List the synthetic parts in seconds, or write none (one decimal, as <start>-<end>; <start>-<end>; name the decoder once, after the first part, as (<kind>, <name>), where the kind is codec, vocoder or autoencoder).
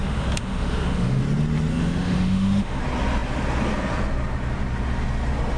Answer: 0.0-1.2 (autoencoder, DAC-VAE); 1.7-2.8